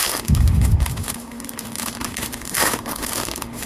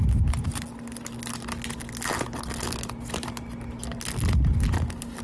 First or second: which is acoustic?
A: second